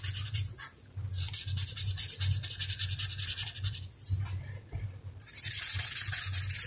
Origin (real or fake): real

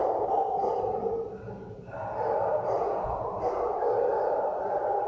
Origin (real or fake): real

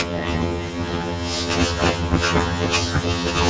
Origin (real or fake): fake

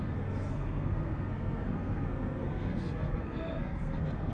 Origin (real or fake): fake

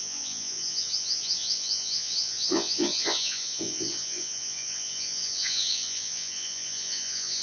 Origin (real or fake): fake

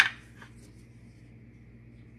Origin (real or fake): real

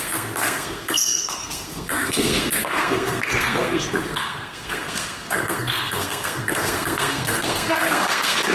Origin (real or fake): fake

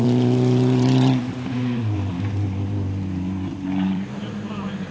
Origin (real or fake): fake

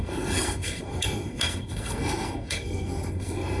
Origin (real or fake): fake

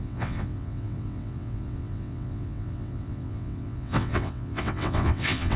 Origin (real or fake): fake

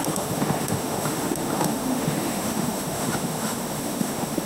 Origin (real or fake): fake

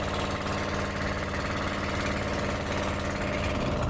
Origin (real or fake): real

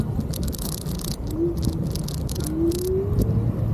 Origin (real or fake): real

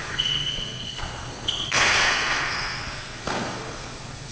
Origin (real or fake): fake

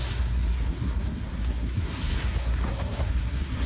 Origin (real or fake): fake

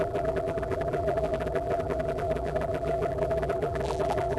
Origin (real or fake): fake